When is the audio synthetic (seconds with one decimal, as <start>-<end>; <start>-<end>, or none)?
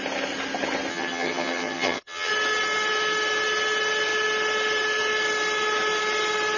0.9-2.3